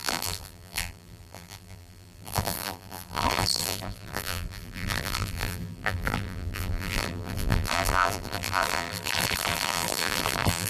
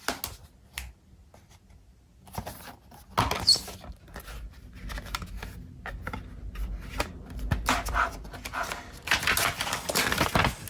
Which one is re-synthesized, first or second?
first